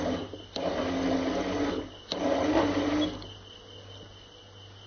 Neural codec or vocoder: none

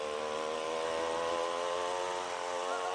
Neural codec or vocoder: none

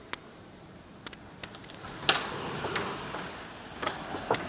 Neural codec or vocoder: none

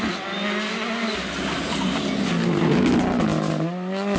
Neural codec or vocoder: none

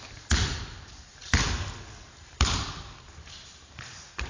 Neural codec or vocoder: vocoder, BigVGAN v2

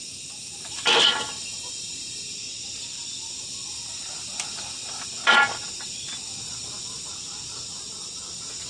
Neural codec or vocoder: none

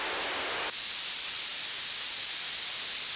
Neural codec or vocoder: none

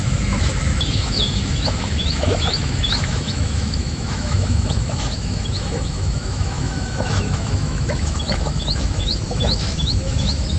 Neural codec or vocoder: autoencoder, DAC-VAE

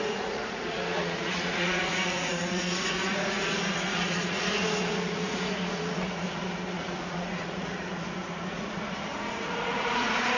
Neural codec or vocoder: vocoder, Vocos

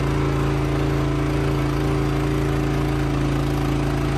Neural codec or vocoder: none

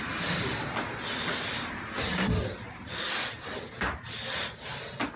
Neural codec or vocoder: none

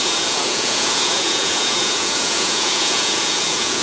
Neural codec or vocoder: vocoder, Vocos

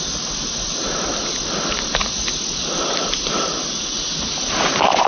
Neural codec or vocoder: none